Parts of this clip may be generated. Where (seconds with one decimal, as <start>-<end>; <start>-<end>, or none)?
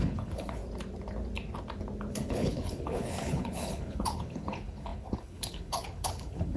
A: 0.0-0.6; 2.1-6.6